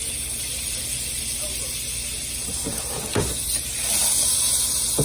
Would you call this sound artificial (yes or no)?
no